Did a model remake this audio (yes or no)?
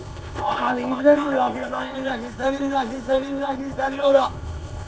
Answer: yes